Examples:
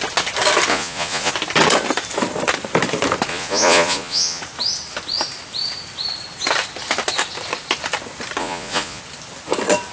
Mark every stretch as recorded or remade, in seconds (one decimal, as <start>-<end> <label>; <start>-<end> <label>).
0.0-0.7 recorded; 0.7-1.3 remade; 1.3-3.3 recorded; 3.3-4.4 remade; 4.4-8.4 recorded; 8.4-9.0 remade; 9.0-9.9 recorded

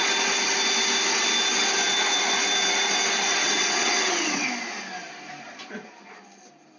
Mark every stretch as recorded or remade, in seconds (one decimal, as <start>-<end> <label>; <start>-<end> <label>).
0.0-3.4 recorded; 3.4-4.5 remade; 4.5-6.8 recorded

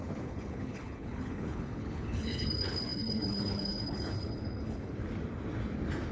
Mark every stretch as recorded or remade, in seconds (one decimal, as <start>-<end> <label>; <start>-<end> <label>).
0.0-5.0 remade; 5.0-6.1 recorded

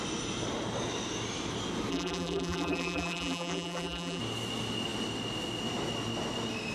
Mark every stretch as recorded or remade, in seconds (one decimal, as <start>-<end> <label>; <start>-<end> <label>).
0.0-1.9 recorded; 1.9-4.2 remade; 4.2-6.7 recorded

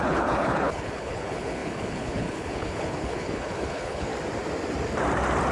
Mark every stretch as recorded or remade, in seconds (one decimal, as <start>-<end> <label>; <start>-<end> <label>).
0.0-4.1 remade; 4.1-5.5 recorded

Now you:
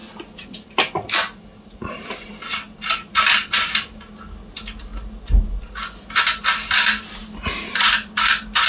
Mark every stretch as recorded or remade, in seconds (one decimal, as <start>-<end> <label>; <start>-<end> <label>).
0.0-7.2 recorded; 7.2-7.7 remade; 7.7-8.7 recorded

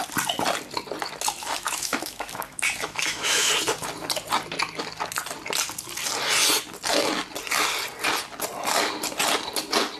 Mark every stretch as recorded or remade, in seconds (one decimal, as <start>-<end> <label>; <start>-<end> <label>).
0.0-1.4 recorded; 1.4-3.5 remade; 3.5-10.0 recorded